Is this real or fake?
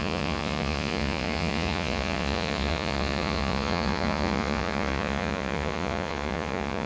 fake